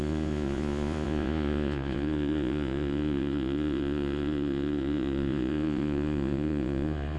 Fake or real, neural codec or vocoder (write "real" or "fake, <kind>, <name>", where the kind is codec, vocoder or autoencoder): fake, vocoder, Vocos